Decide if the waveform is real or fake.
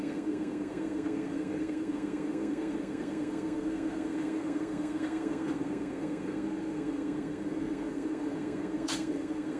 fake